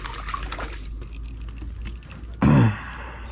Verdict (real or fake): real